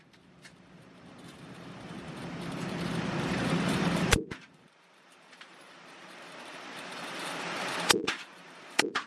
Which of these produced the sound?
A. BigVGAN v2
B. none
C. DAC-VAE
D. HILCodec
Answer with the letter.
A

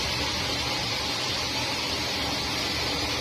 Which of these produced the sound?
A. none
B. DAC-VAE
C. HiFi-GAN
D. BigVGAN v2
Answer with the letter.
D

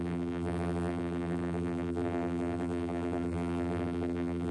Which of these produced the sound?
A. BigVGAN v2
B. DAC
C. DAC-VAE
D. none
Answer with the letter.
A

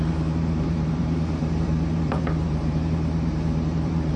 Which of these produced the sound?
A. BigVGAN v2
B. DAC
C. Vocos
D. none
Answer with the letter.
A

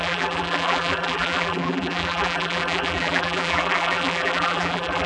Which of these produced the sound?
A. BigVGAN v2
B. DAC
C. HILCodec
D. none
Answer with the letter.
A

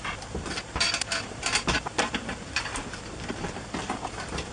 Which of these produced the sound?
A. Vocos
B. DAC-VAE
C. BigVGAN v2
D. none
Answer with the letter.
C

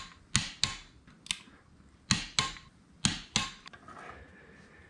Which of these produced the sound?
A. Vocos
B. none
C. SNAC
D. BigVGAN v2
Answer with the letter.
B